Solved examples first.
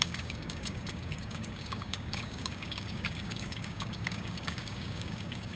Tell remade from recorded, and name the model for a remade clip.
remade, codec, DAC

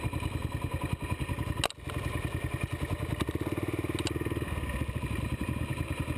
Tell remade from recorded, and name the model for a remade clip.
recorded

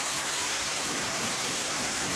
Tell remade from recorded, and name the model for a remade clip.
remade, codec, SNAC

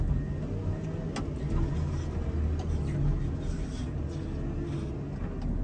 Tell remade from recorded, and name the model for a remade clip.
recorded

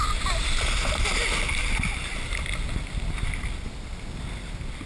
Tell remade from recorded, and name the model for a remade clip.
remade, vocoder, BigVGAN v2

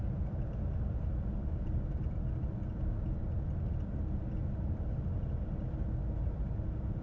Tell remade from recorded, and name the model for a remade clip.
recorded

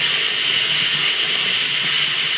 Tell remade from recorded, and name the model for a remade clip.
recorded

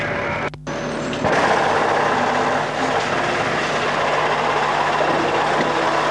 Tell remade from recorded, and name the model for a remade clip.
recorded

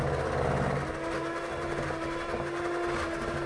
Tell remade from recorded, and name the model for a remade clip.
recorded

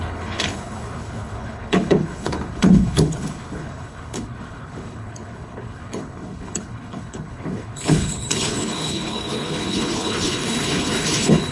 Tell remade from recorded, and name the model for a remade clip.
remade, codec, HILCodec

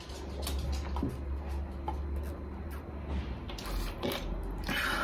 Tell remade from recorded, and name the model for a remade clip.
recorded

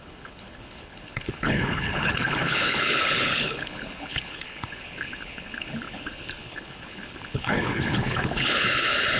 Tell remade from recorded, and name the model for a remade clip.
remade, codec, HILCodec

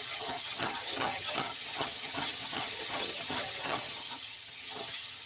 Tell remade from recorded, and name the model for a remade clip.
remade, vocoder, HiFi-GAN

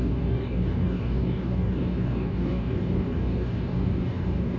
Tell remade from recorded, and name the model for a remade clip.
remade, codec, DAC